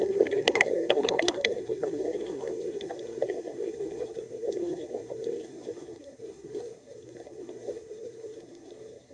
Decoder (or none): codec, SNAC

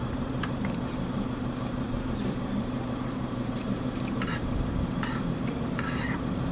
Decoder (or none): vocoder, BigVGAN v2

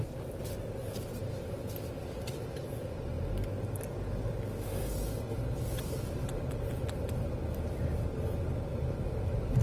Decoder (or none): none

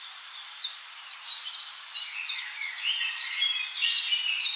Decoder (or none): vocoder, BigVGAN v2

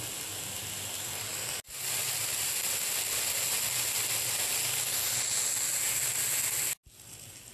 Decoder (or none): none